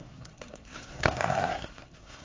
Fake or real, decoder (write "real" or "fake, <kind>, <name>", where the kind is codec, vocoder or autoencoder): fake, codec, SNAC